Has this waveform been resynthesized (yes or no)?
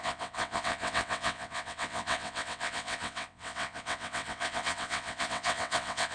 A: yes